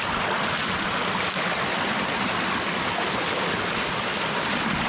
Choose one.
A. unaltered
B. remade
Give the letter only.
A